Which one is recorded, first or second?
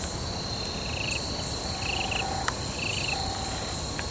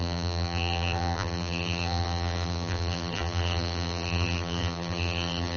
first